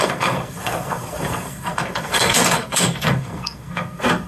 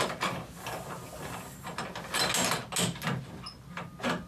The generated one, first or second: first